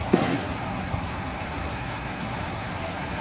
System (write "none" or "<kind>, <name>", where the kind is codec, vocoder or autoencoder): codec, SNAC